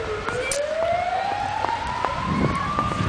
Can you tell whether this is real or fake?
real